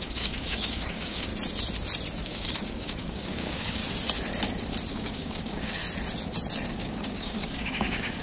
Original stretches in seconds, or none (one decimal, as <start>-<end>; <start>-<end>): 1.3-2.2; 3.8-4.9; 5.8-6.7